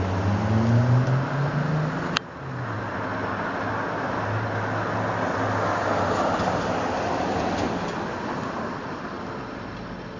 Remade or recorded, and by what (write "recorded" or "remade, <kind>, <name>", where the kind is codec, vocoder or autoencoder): recorded